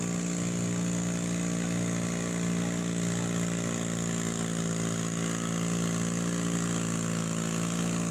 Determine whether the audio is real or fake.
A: real